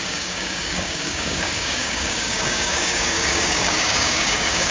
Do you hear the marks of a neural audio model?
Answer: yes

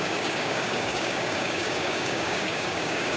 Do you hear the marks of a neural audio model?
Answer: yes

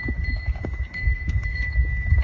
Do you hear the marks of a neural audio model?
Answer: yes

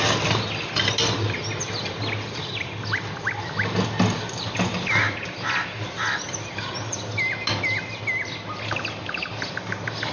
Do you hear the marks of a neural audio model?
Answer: no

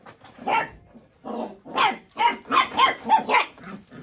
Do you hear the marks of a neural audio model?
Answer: no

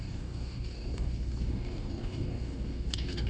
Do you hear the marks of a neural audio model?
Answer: yes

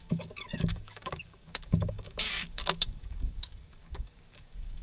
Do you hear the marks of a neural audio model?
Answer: yes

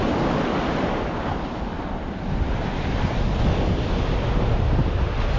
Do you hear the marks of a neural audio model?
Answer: no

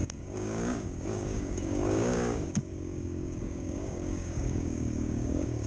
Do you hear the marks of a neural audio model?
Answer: yes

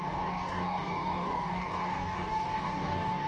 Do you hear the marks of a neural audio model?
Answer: yes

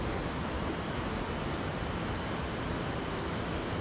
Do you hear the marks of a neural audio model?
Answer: no